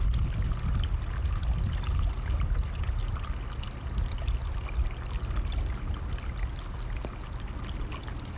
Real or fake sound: real